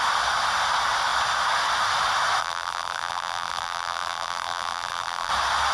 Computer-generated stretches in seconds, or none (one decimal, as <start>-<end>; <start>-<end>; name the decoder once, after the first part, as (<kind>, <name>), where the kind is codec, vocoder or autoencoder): 2.4-5.3 (vocoder, BigVGAN v2)